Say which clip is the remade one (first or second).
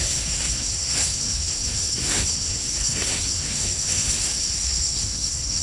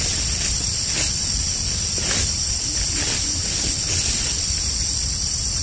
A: first